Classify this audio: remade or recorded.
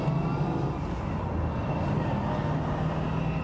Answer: recorded